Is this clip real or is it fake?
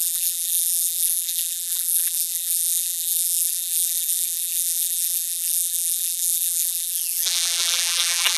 fake